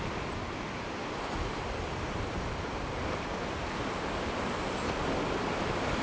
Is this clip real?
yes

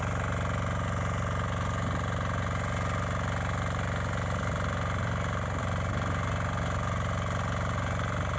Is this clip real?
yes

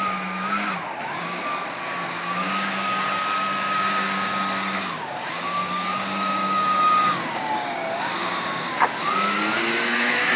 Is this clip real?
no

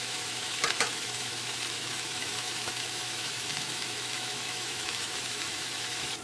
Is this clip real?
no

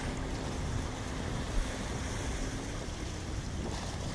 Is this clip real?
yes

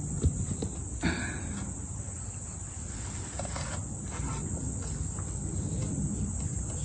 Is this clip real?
yes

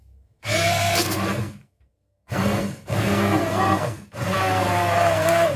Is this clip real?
no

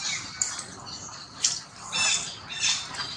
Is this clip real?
yes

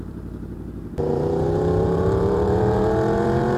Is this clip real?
no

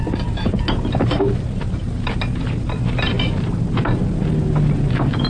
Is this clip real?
yes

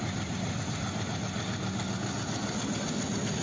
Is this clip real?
yes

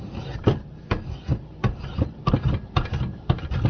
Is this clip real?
yes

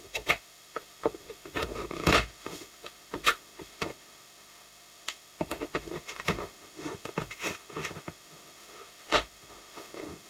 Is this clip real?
no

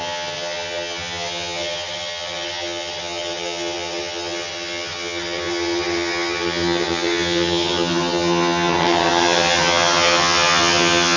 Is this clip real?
no